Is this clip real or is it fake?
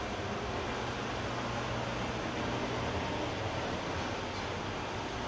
real